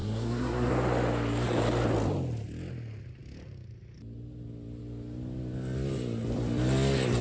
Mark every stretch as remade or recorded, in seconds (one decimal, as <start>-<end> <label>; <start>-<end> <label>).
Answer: 0.0-0.7 remade; 0.7-7.2 recorded